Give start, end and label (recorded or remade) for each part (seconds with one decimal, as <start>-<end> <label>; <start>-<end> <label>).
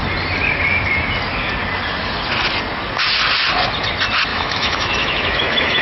0.0-4.3 recorded; 4.3-5.8 remade